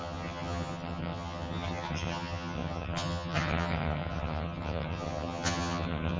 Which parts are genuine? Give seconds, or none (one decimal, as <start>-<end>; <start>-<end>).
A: none